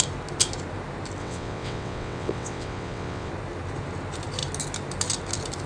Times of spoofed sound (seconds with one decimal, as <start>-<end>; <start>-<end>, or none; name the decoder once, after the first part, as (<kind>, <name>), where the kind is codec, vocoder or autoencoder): 1.2-3.3 (vocoder, WaveNeXt)